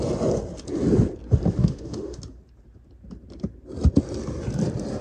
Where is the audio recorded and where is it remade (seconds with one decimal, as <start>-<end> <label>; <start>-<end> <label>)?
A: 0.0-1.6 recorded; 1.6-2.2 remade; 2.2-5.0 recorded